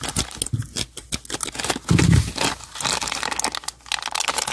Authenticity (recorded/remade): recorded